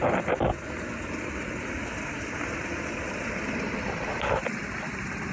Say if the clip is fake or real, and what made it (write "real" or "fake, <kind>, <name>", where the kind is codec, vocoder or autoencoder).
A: real